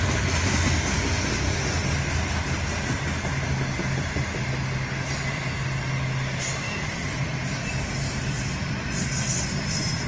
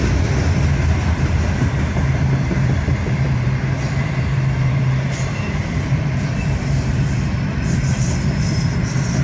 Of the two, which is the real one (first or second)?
first